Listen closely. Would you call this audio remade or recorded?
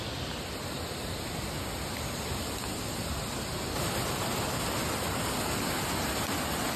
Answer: recorded